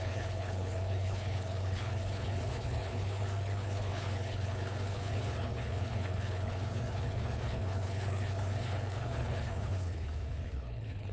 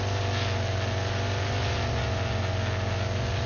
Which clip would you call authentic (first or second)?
second